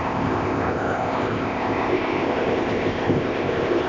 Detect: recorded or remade remade